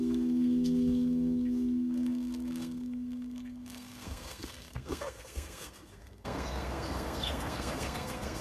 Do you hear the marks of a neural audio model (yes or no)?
yes